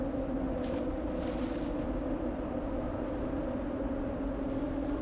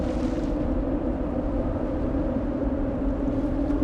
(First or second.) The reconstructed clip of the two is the second